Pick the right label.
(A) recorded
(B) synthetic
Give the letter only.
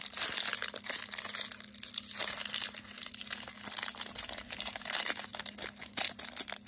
A